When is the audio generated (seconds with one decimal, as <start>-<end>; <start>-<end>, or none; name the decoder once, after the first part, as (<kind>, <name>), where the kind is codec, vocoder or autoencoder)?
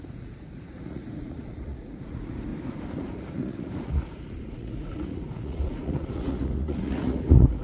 0.0-2.5 (vocoder, Vocos); 3.0-7.6